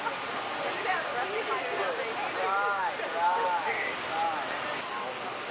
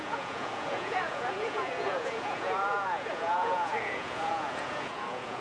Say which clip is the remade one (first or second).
second